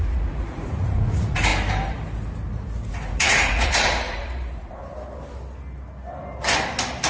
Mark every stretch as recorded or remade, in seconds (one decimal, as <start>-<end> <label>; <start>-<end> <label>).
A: 0.0-1.5 remade; 1.5-2.9 recorded; 2.9-4.8 remade; 4.8-7.1 recorded